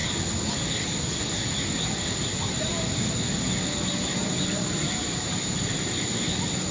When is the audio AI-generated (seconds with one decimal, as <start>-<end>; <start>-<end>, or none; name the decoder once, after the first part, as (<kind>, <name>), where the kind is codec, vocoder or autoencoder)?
none